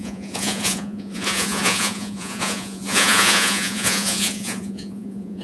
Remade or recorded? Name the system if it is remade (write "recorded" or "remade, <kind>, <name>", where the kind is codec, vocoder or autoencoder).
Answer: remade, vocoder, Vocos